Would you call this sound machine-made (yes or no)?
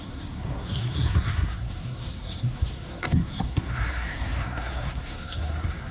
yes